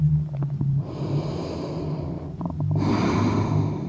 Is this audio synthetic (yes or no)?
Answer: no